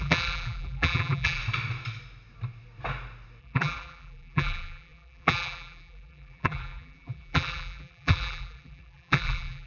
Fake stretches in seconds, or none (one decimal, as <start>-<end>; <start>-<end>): 0.0-1.4; 3.4-9.7